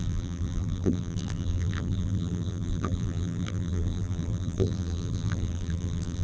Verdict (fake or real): fake